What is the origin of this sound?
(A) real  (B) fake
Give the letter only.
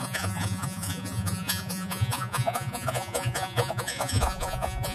B